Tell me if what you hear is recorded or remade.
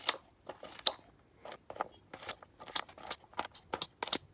recorded